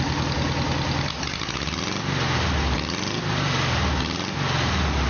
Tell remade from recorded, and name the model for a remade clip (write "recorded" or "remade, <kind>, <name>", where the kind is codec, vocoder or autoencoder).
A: recorded